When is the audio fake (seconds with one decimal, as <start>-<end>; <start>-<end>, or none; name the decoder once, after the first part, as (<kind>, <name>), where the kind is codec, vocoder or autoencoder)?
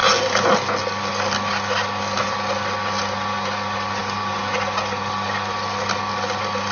none